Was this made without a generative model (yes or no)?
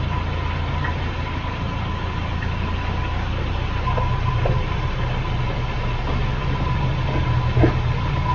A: yes